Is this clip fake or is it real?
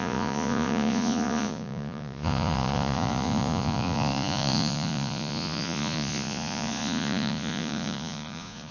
fake